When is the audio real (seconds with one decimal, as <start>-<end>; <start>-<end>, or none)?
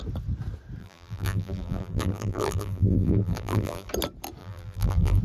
0.0-0.8; 3.9-4.4